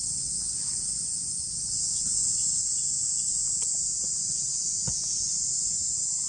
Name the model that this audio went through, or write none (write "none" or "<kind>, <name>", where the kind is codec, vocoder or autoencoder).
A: vocoder, Vocos